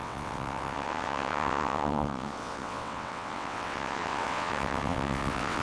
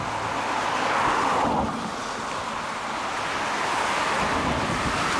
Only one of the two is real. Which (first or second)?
second